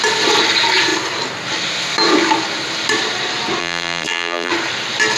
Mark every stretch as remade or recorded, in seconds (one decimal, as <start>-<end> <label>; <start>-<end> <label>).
0.0-3.6 recorded; 3.6-4.5 remade; 4.5-5.2 recorded